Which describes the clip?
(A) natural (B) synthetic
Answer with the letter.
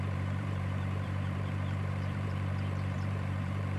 B